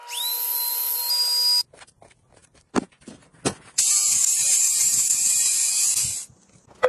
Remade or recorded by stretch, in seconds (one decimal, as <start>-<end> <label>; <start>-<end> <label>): 0.0-2.4 recorded; 2.4-3.3 remade; 3.3-4.3 recorded; 4.3-5.1 remade; 5.1-6.9 recorded